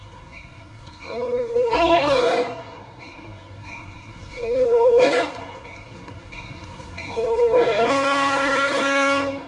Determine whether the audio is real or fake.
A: fake